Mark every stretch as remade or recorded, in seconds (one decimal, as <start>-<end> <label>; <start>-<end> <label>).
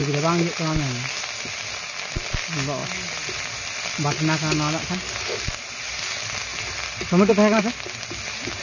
0.0-8.6 recorded